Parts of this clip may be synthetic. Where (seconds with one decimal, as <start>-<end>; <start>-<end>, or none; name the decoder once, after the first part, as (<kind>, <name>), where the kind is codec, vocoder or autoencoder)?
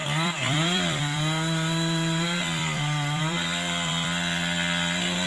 0.0-5.3 (vocoder, BigVGAN v2)